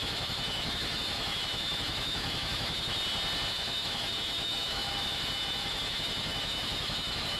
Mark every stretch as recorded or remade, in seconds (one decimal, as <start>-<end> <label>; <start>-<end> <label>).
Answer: 0.0-2.9 remade; 2.9-3.5 recorded; 3.5-7.4 remade